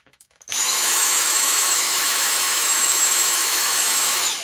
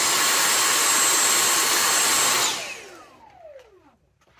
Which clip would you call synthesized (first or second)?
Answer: first